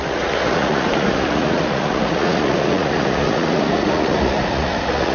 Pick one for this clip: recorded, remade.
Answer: remade